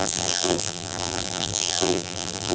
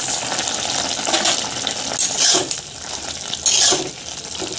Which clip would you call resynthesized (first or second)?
first